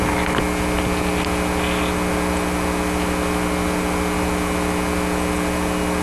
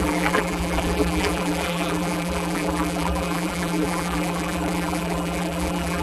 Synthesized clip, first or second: second